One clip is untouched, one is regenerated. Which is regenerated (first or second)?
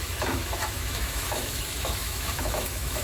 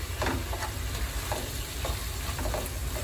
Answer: first